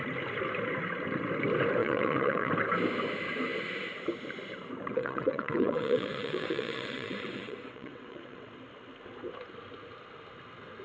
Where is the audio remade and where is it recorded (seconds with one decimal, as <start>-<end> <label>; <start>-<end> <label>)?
0.0-1.8 recorded; 1.8-2.5 remade; 2.5-4.9 recorded; 4.9-8.5 remade; 8.5-10.8 recorded